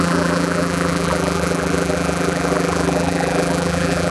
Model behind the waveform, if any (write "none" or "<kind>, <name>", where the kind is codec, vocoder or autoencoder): vocoder, BigVGAN v2